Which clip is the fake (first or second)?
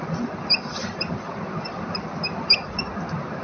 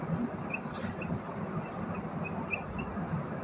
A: first